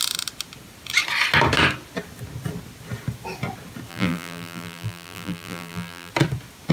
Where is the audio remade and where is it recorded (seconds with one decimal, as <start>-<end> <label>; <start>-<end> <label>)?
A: 0.0-3.9 recorded; 3.9-6.1 remade; 6.1-6.7 recorded